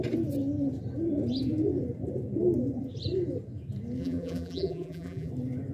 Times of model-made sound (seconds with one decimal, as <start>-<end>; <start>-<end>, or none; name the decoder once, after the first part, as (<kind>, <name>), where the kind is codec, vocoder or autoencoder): 4.0-5.3 (vocoder, BigVGAN v2)